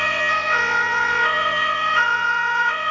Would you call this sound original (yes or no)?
no